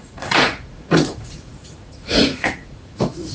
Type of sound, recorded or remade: remade